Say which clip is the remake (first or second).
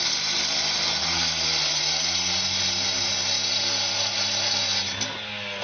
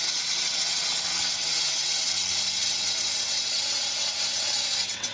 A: second